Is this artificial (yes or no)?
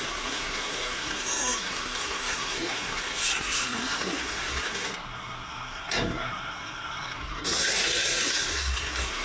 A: yes